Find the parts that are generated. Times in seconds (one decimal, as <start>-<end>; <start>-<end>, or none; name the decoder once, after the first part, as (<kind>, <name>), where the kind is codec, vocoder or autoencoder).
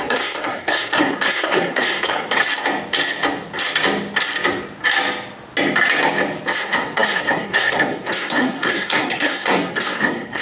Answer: 0.0-2.4 (codec, SNAC); 6.6-10.4